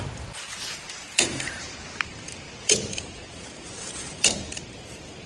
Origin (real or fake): fake